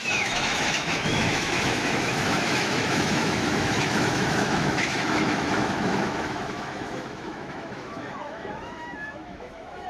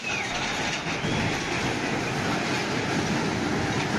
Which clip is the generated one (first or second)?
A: first